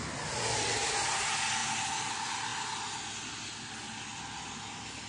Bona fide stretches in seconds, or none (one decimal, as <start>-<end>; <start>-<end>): 0.0-5.1